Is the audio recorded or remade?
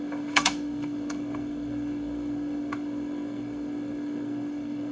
remade